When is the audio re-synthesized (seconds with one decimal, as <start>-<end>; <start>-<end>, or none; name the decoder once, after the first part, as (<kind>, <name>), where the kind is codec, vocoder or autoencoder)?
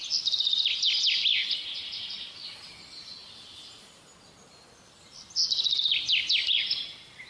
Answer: none